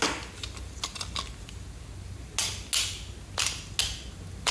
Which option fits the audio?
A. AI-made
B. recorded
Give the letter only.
B